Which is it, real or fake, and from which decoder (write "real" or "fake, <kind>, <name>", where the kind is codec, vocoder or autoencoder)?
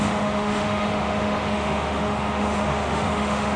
fake, autoencoder, DAC-VAE